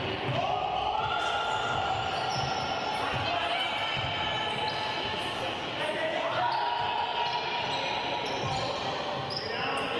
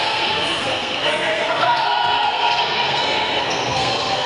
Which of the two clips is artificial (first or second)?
second